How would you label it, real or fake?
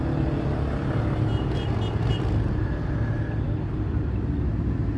real